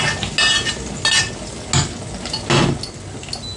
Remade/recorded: recorded